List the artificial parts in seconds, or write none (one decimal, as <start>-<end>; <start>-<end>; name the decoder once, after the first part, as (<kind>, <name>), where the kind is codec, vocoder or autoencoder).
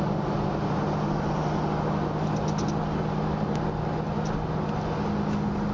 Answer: none